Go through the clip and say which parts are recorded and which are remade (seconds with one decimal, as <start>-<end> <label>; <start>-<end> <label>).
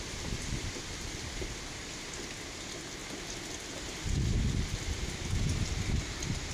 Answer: 0.0-6.5 recorded